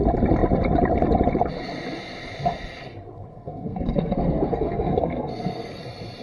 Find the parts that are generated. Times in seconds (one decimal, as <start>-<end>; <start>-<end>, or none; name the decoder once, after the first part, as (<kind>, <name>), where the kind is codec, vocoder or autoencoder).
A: 3.3-5.8 (codec, SNAC)